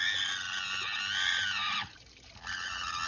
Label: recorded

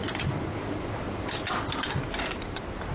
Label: recorded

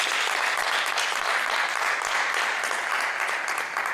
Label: recorded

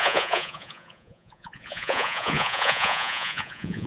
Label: remade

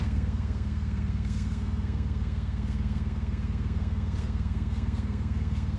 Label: remade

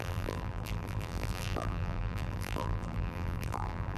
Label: remade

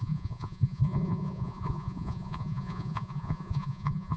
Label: remade